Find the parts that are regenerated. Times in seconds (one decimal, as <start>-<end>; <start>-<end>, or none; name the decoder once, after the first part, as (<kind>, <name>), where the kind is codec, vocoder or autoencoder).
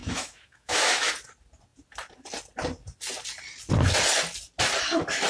0.0-1.1 (autoencoder, DAC-VAE)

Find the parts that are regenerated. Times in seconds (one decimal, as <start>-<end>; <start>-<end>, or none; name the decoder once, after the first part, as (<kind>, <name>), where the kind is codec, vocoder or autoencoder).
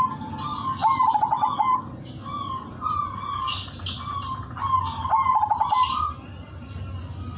none